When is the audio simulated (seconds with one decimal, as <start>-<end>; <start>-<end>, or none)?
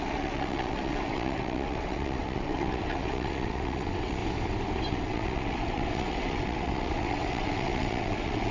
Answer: 0.0-4.2; 4.9-8.5